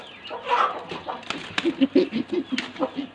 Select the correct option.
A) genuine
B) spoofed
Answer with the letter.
A